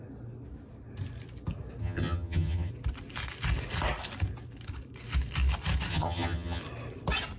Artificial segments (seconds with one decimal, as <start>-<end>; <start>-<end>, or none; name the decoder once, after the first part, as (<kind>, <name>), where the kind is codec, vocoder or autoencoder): 1.8-2.7 (vocoder, HiFi-GAN); 5.9-6.6